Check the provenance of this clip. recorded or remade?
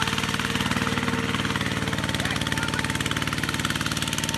recorded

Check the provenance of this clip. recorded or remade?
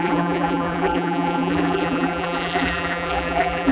remade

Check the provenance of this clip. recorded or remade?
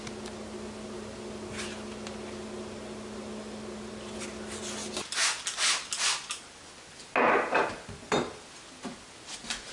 recorded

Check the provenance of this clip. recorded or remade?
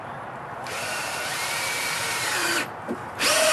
remade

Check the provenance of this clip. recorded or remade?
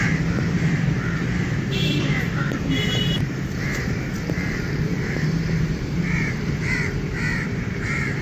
remade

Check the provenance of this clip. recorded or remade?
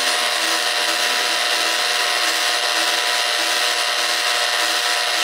recorded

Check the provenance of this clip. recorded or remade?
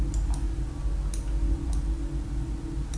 recorded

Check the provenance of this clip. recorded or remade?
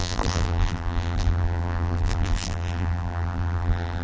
remade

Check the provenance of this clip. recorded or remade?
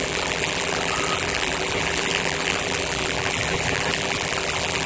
remade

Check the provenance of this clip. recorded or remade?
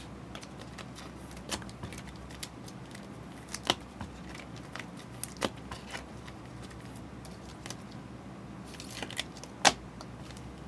recorded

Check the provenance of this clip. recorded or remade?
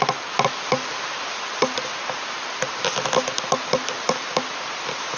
recorded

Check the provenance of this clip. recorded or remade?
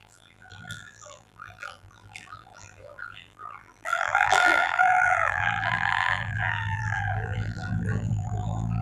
remade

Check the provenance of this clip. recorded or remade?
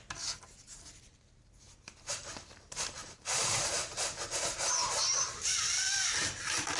remade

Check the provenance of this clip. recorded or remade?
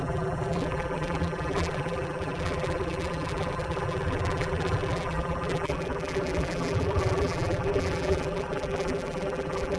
remade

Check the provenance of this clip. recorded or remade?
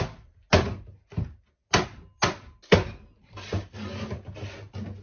recorded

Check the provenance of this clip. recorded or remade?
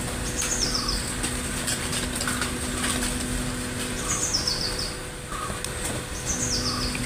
recorded